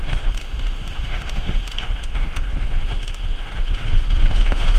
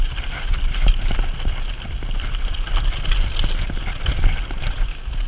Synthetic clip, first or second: first